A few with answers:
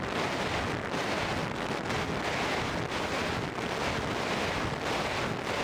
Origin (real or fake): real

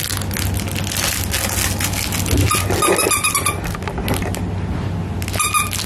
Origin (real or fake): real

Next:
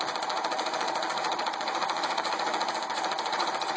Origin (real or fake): fake